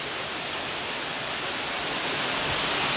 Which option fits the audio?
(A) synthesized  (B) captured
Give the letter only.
B